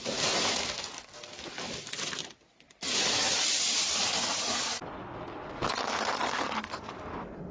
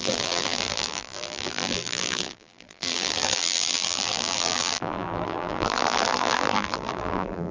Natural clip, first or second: first